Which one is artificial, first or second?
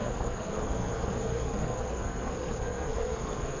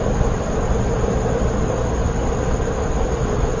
first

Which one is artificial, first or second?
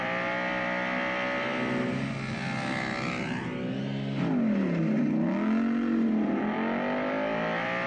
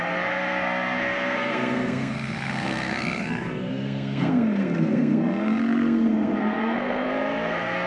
second